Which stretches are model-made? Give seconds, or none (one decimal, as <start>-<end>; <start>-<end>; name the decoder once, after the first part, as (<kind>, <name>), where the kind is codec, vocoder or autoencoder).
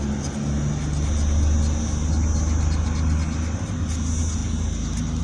none